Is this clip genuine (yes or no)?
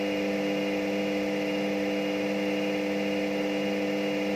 yes